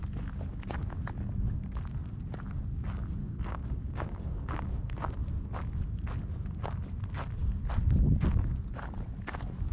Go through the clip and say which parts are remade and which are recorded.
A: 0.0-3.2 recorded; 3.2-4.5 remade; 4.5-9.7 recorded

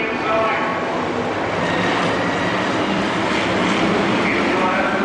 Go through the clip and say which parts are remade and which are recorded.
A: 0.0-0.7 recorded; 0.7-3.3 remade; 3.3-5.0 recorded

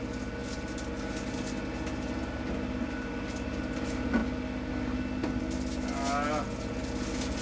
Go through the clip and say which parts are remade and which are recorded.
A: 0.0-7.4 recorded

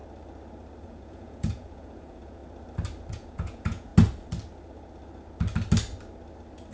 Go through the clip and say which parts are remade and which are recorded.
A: 0.0-0.8 recorded; 0.8-2.4 remade; 2.4-3.1 recorded; 3.1-3.9 remade; 3.9-6.7 recorded

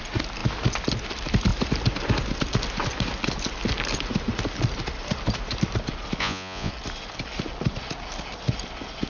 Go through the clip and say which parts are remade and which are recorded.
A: 0.0-6.2 recorded; 6.2-6.7 remade; 6.7-9.1 recorded

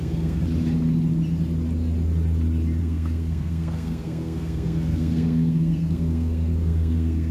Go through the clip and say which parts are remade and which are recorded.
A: 0.0-0.4 remade; 0.4-2.8 recorded; 2.8-7.3 remade

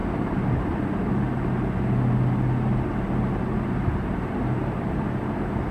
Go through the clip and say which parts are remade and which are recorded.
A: 0.0-5.7 recorded

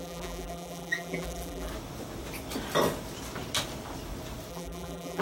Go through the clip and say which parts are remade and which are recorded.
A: 0.0-1.7 remade; 1.7-4.5 recorded; 4.5-5.2 remade